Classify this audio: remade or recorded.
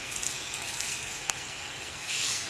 remade